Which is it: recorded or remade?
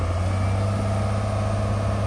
recorded